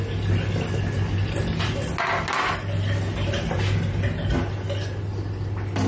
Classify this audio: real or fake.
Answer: real